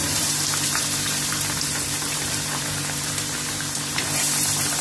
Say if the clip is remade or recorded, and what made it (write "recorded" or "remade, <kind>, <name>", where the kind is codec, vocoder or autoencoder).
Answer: remade, vocoder, BigVGAN v2